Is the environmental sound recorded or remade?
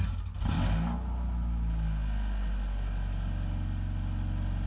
recorded